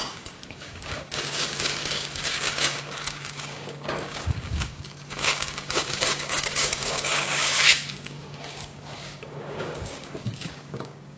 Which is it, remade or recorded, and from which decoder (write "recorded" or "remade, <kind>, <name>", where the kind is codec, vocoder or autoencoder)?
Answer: remade, codec, DAC